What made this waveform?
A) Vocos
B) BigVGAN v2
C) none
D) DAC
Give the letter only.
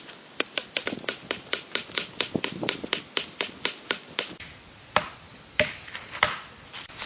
C